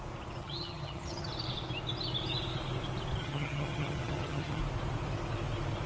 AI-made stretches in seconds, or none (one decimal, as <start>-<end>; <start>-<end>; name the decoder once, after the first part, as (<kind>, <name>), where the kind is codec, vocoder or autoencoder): 0.4-1.3 (vocoder, HiFi-GAN); 3.2-4.6